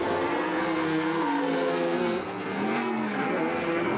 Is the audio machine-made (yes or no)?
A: yes